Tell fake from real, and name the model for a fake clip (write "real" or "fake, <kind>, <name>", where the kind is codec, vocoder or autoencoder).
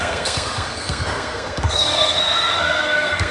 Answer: fake, codec, SNAC